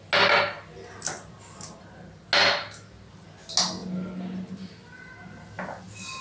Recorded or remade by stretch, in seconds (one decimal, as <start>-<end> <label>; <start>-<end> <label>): 0.0-6.2 recorded